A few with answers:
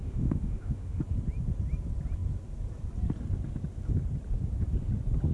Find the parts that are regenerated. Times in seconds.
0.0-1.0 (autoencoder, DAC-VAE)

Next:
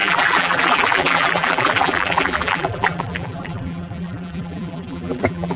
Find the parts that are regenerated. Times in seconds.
0.0-5.6 (vocoder, BigVGAN v2)